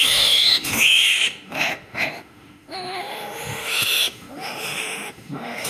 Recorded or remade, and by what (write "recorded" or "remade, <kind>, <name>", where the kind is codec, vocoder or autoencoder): remade, autoencoder, DAC-VAE